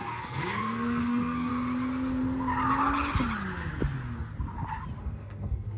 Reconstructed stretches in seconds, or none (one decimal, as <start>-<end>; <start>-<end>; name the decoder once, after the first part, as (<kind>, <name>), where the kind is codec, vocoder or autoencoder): 0.0-1.5 (codec, SNAC); 5.0-5.8

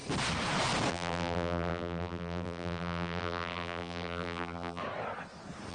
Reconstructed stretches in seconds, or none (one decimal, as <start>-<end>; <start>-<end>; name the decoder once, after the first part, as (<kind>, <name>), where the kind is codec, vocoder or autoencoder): 0.9-4.8 (vocoder, BigVGAN v2)

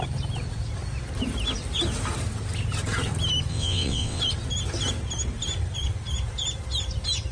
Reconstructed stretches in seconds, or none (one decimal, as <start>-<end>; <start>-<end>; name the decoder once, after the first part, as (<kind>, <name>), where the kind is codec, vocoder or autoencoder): 3.5-4.2 (vocoder, WaveNeXt)